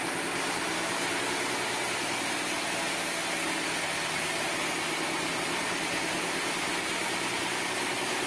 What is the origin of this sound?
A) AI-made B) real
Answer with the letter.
B